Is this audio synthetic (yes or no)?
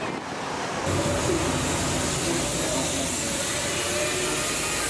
no